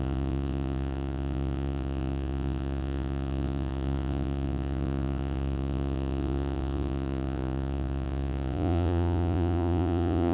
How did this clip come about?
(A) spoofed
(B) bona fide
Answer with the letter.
A